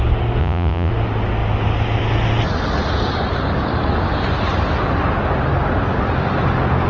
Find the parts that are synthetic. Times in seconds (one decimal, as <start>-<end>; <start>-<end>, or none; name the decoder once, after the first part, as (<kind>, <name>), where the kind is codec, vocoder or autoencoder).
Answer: 0.4-0.9 (vocoder, Vocos)